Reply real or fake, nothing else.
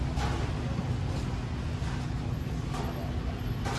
real